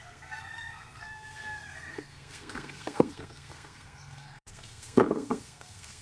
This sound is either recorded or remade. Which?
remade